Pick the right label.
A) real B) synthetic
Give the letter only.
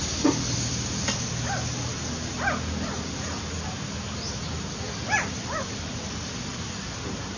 A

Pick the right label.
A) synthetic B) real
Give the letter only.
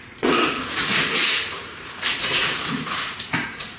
A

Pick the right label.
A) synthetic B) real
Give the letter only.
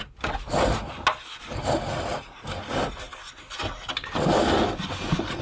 B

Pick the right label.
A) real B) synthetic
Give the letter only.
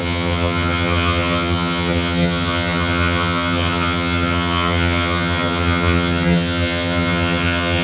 B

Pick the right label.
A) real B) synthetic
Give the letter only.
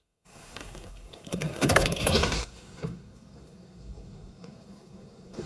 B